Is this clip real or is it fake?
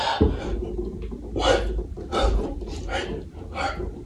real